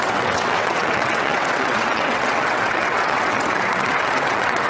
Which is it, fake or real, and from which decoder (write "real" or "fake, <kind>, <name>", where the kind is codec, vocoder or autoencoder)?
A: fake, vocoder, WaveNeXt